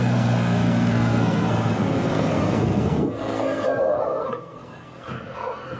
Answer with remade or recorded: remade